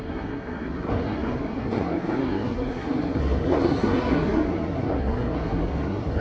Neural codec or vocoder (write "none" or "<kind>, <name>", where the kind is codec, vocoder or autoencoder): codec, SNAC